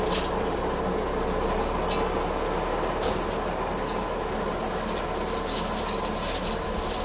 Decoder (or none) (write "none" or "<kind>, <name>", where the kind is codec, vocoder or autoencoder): none